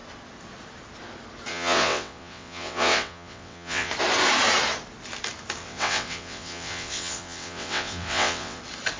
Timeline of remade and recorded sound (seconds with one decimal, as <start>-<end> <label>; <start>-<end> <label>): 0.0-1.5 recorded; 1.5-3.9 remade; 3.9-5.6 recorded; 5.6-8.6 remade; 8.6-9.0 recorded